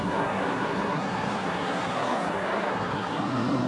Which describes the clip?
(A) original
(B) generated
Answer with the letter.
B